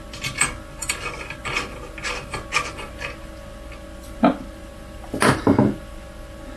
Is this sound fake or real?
real